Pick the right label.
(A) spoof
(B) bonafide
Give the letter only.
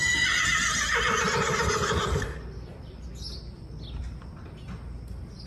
B